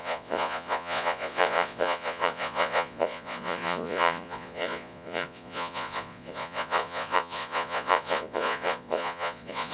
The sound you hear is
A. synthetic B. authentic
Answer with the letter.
A